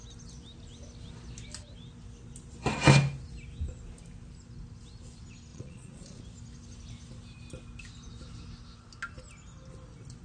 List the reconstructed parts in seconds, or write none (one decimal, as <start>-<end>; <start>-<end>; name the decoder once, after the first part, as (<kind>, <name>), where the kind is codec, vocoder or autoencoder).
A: 5.5-6.2 (vocoder, Vocos)